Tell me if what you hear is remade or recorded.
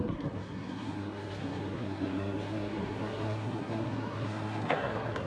remade